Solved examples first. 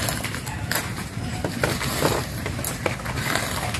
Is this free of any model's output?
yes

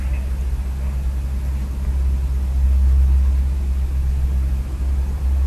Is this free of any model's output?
yes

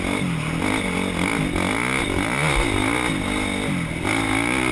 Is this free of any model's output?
yes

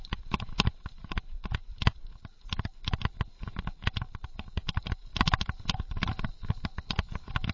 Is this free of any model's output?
yes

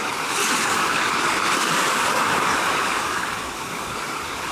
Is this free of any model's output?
no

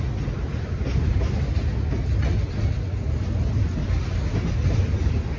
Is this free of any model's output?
yes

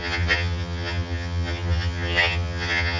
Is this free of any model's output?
no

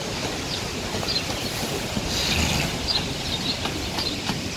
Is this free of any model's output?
yes